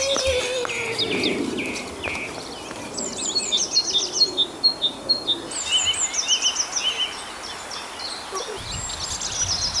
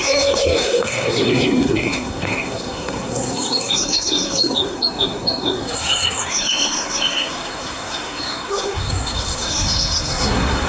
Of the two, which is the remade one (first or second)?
second